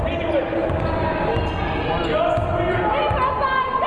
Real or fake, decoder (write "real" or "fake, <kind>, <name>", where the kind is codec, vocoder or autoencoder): real